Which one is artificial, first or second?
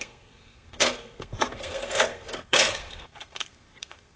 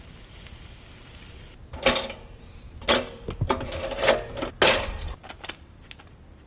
first